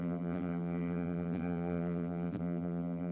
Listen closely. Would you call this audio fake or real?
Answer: fake